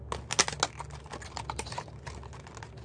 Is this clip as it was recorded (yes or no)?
yes